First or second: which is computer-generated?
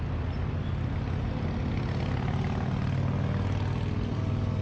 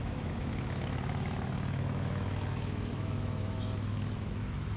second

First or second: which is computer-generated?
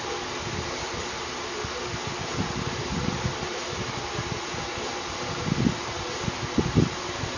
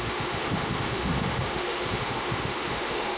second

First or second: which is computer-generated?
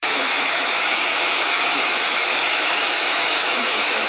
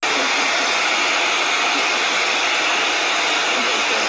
first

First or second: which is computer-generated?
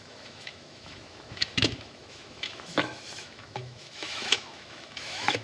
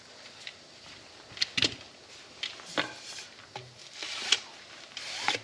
first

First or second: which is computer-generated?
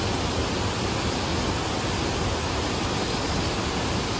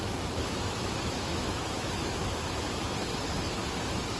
second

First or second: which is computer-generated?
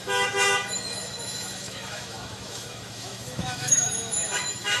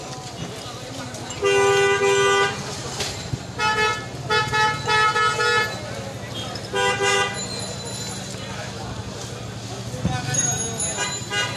first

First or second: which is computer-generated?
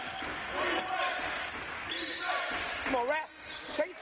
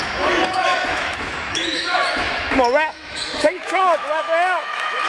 second